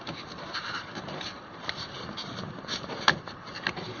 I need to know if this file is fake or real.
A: fake